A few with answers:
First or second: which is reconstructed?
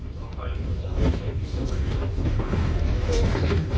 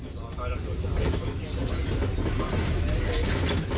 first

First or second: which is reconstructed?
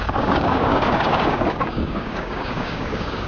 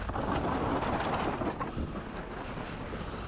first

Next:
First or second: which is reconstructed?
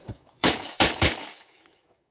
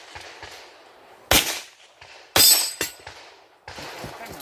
first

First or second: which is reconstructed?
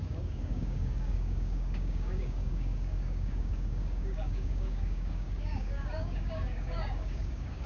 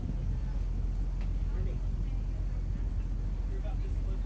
first